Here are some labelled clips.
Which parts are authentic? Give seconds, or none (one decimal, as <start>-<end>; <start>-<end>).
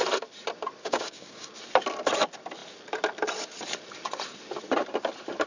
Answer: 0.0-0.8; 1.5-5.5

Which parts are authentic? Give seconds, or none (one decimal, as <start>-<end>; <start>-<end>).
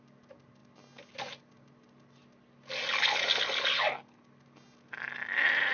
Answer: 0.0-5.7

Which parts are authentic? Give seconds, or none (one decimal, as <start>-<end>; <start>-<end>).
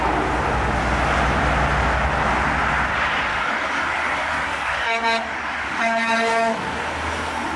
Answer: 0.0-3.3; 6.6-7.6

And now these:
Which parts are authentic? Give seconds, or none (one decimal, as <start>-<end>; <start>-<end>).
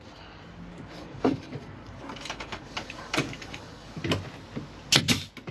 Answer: 0.0-0.7; 4.0-5.5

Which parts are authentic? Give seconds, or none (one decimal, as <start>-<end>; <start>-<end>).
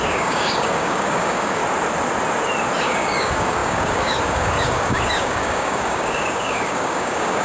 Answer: 1.6-2.8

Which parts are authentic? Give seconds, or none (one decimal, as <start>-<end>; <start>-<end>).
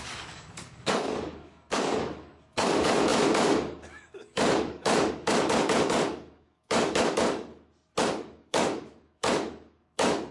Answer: 7.5-8.0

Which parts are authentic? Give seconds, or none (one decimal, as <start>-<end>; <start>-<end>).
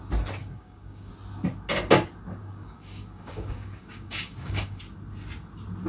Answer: 0.0-0.4; 1.1-2.4; 4.8-5.9